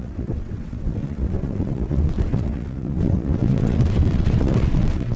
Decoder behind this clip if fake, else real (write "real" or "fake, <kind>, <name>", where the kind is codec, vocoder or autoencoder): fake, vocoder, WaveNeXt